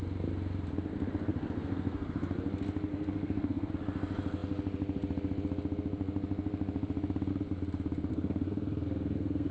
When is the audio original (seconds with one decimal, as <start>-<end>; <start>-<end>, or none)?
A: 0.0-1.3; 2.1-2.9; 3.7-8.1